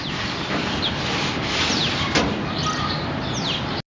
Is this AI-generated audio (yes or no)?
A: no